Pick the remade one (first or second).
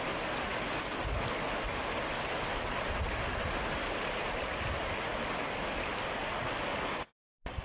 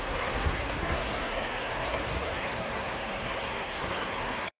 second